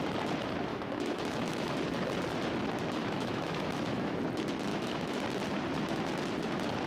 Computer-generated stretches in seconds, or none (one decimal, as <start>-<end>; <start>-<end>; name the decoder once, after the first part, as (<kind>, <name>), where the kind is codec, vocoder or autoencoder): 0.7-1.7 (autoencoder, DAC-VAE); 3.0-4.2; 4.7-5.2